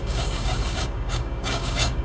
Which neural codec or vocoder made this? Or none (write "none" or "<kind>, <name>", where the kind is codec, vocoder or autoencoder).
codec, DAC